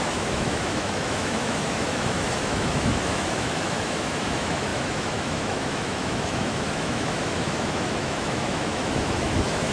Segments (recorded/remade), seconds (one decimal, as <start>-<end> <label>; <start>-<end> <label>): 0.0-9.7 remade